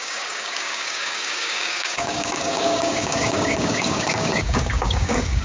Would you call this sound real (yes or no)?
no